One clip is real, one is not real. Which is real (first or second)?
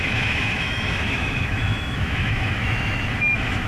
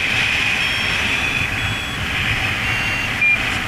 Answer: second